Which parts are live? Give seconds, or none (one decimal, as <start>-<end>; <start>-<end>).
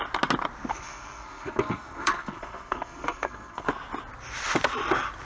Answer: 0.0-0.7; 3.7-5.2